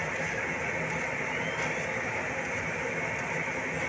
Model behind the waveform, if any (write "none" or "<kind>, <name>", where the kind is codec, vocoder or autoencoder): none